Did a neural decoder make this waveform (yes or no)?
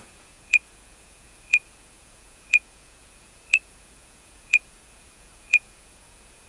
yes